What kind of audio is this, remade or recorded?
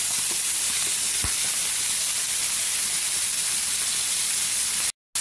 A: recorded